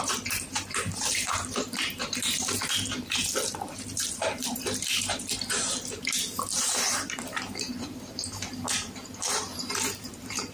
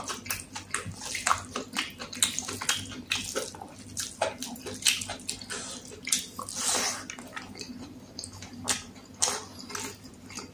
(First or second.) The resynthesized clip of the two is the first